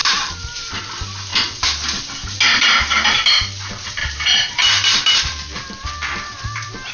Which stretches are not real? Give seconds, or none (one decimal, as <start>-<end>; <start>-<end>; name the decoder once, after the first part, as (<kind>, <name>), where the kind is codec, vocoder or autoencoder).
0.0-0.8 (vocoder, BigVGAN v2); 4.0-6.9